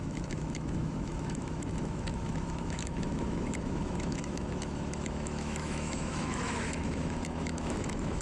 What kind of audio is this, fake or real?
fake